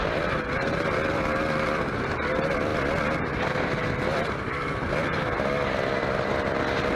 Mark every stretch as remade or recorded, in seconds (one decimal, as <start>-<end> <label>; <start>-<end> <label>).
0.0-7.0 recorded

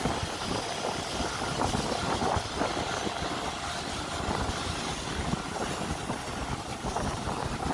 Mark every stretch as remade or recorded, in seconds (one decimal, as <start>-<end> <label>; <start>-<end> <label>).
0.0-7.7 recorded

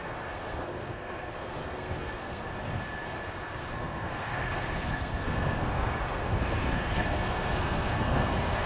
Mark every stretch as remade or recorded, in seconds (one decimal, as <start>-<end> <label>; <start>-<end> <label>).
0.0-2.5 remade; 2.5-3.6 recorded; 3.6-8.7 remade

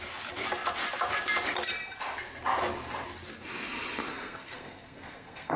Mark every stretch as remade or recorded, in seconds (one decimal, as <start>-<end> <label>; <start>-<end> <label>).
0.0-4.1 recorded; 4.1-5.6 remade

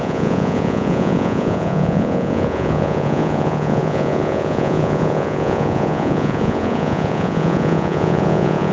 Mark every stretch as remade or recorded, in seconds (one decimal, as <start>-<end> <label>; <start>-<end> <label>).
0.0-8.7 remade

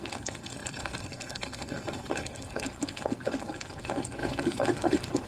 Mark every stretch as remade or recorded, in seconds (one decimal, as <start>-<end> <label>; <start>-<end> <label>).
0.0-5.3 remade

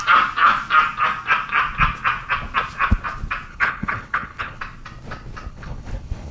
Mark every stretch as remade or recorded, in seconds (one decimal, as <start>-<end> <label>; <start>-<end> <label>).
0.0-3.5 recorded; 3.5-4.6 remade; 4.6-5.5 recorded; 5.5-6.3 remade

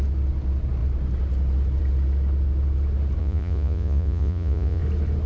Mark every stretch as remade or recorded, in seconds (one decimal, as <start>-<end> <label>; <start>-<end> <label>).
0.0-3.2 recorded; 3.2-4.8 remade; 4.8-5.3 recorded